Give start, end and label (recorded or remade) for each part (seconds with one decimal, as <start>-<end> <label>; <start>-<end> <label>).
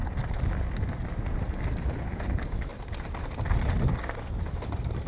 0.0-2.2 recorded; 2.2-2.7 remade; 2.7-4.3 recorded; 4.3-5.1 remade